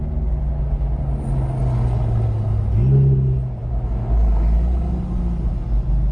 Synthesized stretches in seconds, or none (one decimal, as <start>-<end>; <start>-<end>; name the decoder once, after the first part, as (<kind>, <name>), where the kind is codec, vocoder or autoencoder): none